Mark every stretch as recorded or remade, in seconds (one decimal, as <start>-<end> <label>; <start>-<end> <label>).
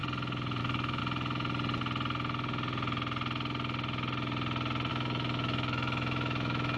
0.0-0.6 recorded; 0.6-1.0 remade; 1.0-4.9 recorded; 4.9-6.8 remade